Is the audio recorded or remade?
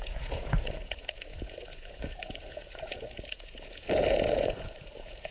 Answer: remade